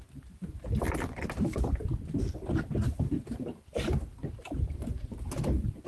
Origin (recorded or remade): recorded